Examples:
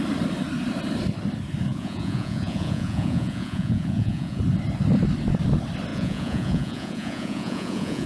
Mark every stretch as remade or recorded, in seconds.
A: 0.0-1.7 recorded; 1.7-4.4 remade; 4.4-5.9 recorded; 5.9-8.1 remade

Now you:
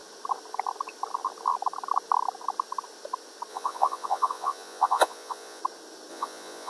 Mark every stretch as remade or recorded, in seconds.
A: 0.0-3.5 recorded; 3.5-5.6 remade; 5.6-6.1 recorded; 6.1-6.7 remade